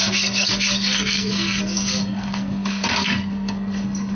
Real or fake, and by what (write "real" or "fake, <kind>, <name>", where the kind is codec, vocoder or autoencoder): fake, codec, SNAC